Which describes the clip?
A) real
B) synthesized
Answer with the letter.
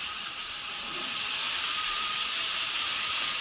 B